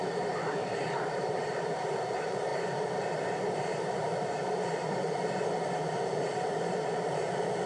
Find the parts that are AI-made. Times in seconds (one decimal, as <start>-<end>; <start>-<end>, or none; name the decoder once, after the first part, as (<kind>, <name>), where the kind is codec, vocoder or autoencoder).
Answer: 0.0-2.5 (vocoder, BigVGAN v2); 3.5-7.7